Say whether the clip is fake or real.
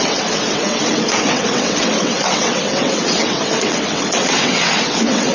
fake